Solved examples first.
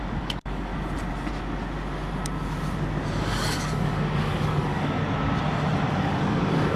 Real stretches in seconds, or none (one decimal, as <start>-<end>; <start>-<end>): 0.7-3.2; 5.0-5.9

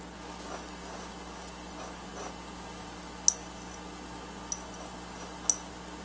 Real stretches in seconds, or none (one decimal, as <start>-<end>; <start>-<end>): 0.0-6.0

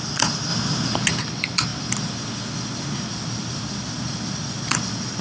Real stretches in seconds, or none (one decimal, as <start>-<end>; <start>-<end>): 0.5-1.2; 1.7-3.1

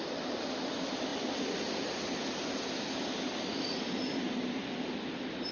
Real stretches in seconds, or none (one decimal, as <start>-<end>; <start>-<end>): 0.0-5.5